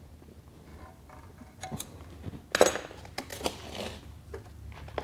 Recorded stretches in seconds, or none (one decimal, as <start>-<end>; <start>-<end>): 0.0-0.7; 2.1-5.0